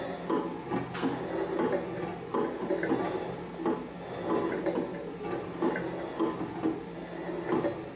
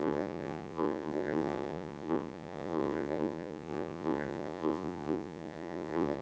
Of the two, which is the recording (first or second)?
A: first